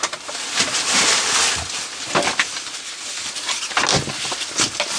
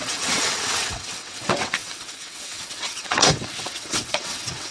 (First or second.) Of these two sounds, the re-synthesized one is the second